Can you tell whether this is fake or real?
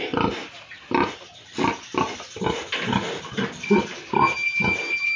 real